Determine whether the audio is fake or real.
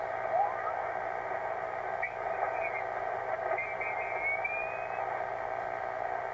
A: real